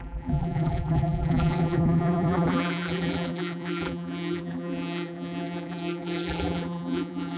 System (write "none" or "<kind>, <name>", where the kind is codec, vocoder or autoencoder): vocoder, BigVGAN v2